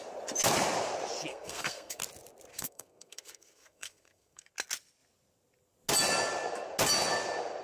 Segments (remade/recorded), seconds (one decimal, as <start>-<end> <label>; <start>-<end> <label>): 0.0-1.3 recorded; 1.3-2.0 remade; 2.0-2.5 recorded; 2.5-4.5 remade; 4.5-7.6 recorded